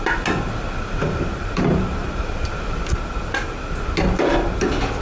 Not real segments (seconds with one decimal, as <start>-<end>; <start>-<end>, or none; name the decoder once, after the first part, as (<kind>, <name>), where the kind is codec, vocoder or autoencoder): 1.0-3.0 (vocoder, BigVGAN v2)